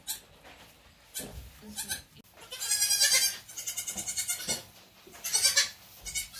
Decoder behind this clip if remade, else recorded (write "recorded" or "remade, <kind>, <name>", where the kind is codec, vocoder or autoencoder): recorded